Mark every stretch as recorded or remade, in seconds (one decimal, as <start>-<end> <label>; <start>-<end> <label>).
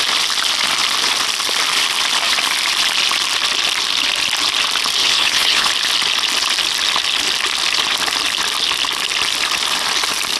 0.0-5.0 recorded; 5.0-5.7 remade; 5.7-10.4 recorded